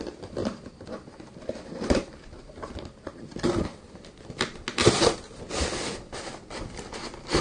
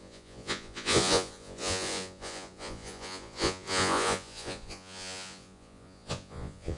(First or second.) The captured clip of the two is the first